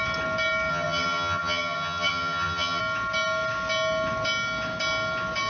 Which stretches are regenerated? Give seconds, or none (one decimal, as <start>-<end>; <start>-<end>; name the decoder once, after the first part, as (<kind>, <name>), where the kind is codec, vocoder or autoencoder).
0.7-2.8 (vocoder, HiFi-GAN)